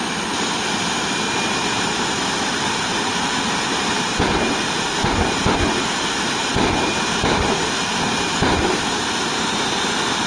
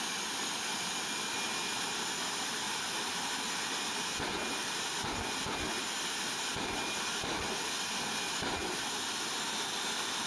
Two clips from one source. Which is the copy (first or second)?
first